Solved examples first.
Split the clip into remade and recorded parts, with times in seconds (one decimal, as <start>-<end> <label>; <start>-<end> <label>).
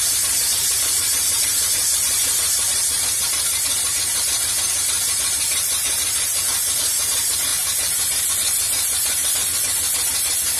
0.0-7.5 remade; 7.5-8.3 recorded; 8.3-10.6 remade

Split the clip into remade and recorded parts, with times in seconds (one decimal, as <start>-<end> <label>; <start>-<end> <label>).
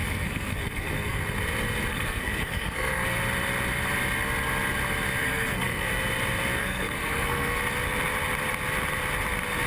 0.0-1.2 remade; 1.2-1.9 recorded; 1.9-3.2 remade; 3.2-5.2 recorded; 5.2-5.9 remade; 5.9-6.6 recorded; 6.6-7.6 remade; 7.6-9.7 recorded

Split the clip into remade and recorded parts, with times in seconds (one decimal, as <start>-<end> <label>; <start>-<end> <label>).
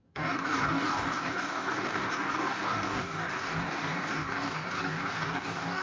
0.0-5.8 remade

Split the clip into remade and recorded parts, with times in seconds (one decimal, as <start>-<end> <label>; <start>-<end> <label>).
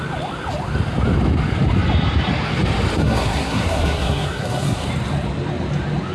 0.0-3.0 recorded; 3.0-4.9 remade; 4.9-6.1 recorded